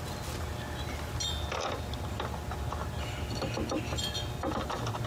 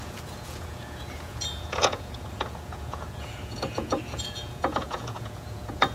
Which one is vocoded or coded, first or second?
second